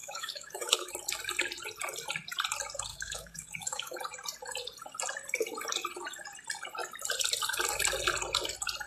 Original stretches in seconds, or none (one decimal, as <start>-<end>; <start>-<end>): 0.9-2.9; 4.0-8.9